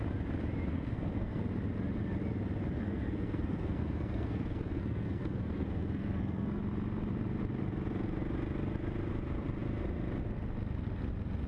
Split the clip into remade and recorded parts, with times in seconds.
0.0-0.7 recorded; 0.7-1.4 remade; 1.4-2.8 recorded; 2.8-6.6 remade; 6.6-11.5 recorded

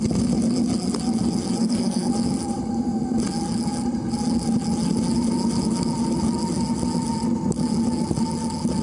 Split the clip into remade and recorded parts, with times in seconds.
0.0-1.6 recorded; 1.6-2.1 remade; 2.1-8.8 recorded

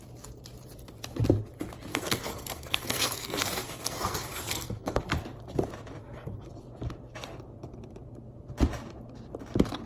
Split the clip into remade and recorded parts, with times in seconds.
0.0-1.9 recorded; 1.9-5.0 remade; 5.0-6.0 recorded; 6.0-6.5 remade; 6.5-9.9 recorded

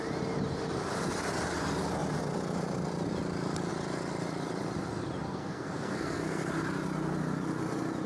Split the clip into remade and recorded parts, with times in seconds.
0.0-5.2 recorded; 5.2-6.5 remade; 6.5-8.1 recorded